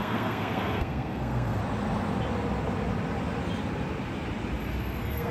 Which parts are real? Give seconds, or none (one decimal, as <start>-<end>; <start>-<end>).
1.6-4.8